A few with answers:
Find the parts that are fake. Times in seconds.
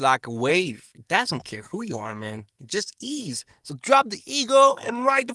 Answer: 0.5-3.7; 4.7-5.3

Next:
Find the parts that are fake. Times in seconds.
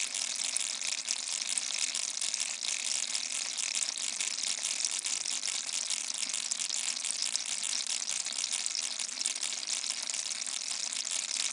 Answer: none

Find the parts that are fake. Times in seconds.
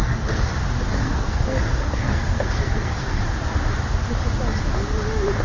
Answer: 0.0-0.5; 1.0-3.2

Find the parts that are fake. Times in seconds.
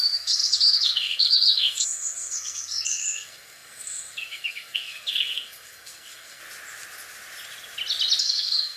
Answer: 0.0-6.4; 8.2-8.8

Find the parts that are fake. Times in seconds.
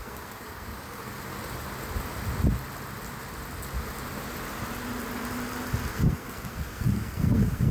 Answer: 0.0-1.3; 5.9-7.7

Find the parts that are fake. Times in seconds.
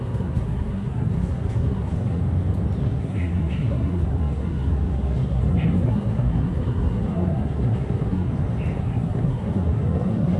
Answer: 0.0-2.2; 2.8-8.3; 8.8-10.4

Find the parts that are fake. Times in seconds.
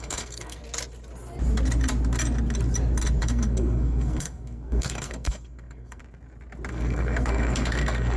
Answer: 0.0-0.6; 3.2-6.0; 6.7-8.2